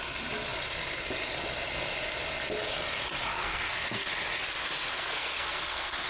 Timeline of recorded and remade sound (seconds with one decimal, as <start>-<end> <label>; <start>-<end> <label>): 0.0-3.3 recorded; 3.3-4.1 remade; 4.1-4.9 recorded; 4.9-6.1 remade